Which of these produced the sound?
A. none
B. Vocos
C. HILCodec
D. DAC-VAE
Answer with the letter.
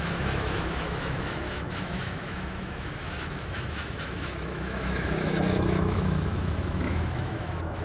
D